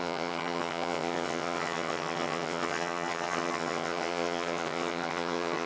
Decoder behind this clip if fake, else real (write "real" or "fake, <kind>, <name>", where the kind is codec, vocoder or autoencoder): fake, vocoder, HiFi-GAN